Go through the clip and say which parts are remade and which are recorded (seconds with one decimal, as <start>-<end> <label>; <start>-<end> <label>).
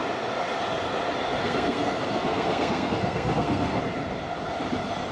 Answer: 0.0-1.4 recorded; 1.4-3.8 remade; 3.8-5.1 recorded